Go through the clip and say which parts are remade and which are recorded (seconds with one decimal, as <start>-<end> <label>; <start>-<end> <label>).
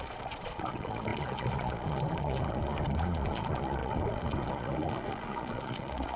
0.0-6.2 remade